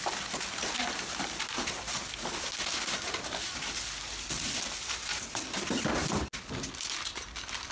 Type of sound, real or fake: real